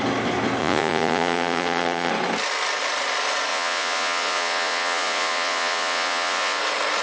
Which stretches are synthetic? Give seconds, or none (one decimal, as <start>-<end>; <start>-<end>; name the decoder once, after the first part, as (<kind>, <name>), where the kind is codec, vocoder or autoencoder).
0.6-2.1 (vocoder, Vocos); 3.5-6.6